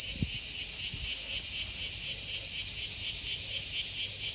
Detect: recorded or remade recorded